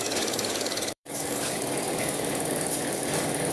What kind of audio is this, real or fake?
fake